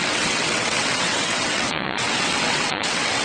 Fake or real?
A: fake